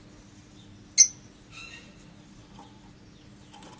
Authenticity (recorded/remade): recorded